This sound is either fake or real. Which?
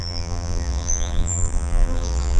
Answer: fake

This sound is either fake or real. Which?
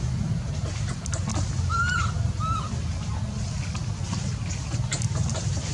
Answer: real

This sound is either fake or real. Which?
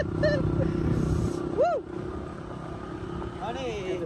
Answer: real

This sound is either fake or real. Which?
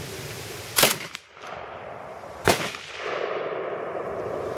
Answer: real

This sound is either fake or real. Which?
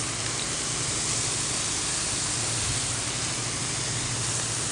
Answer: real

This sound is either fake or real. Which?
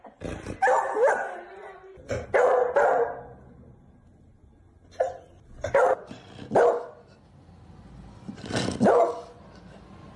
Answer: real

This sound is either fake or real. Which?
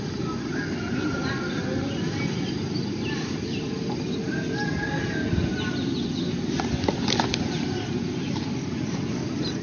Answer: real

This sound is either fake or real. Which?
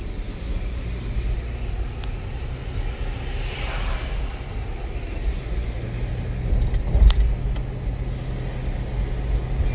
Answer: real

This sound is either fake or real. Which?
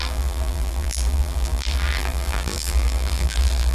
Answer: fake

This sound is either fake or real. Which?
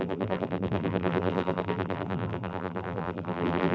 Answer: fake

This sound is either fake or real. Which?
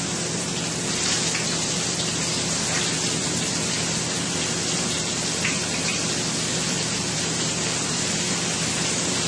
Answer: fake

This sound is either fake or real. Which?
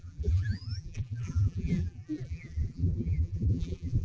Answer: fake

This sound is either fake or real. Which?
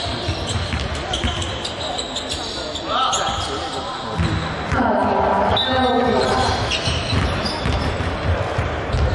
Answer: real